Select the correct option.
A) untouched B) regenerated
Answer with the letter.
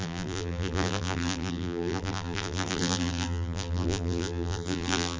B